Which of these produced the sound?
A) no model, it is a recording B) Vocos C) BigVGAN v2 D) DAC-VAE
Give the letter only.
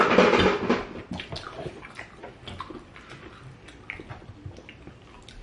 A